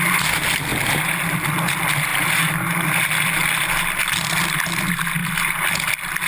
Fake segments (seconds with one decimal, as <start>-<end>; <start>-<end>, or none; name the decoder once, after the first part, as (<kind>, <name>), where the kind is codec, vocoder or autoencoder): none